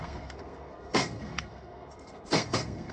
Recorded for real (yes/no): no